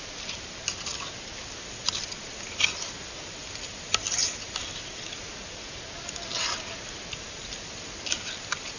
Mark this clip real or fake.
real